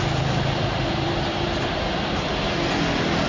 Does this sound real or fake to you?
fake